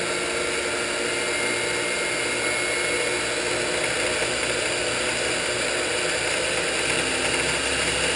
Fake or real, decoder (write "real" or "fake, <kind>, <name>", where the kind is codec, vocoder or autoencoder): real